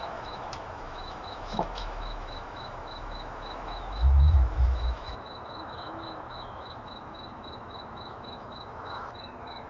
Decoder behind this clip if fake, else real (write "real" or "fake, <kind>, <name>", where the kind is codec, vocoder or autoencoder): fake, autoencoder, DAC-VAE